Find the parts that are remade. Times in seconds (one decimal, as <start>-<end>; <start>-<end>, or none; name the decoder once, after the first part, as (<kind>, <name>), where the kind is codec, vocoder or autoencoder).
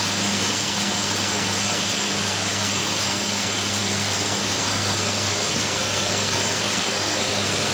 0.0-7.7 (codec, SNAC)